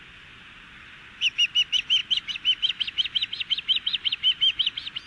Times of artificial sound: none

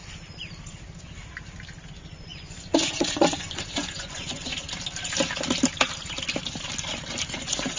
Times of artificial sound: 1.9-4.5; 7.3-7.8

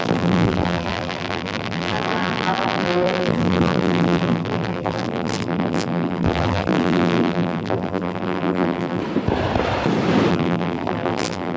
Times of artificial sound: 0.0-9.0; 10.3-11.6

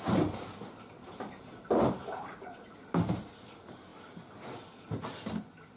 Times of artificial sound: 1.0-3.3

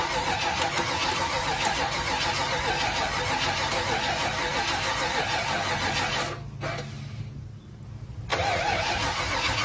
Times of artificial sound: 8.3-8.9

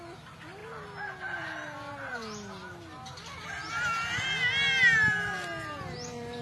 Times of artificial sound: none